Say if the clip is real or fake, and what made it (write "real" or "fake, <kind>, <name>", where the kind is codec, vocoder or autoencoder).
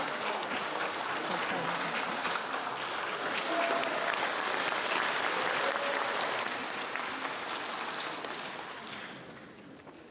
real